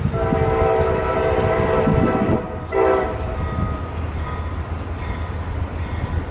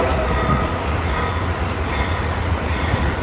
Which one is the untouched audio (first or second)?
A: first